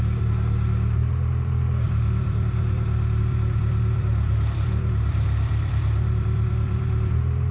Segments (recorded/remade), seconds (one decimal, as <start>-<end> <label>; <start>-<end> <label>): 0.0-7.5 remade